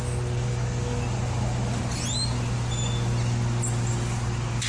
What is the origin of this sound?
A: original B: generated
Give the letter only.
A